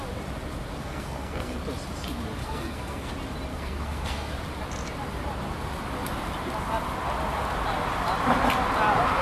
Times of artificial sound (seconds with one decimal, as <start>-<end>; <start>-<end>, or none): 0.8-1.6; 2.4-3.1; 3.5-4.3